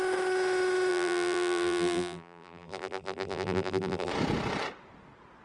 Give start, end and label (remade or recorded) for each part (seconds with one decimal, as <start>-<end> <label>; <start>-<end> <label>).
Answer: 0.0-0.9 recorded; 0.9-4.1 remade; 4.1-5.4 recorded